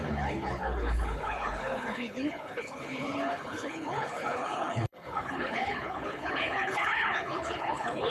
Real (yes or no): no